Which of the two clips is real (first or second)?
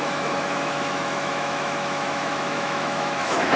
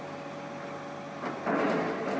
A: second